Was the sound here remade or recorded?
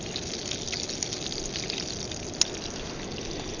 recorded